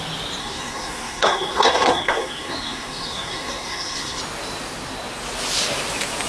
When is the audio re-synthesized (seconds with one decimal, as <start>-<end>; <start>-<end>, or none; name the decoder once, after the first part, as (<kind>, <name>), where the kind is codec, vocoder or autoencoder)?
0.4-4.2 (codec, SNAC)